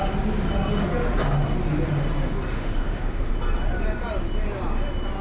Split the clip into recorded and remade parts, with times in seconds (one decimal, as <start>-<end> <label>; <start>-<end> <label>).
0.0-2.5 recorded; 2.5-3.3 remade; 3.3-5.2 recorded